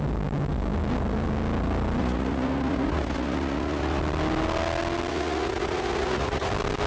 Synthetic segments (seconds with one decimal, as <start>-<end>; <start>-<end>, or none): 2.0-4.0; 5.1-6.5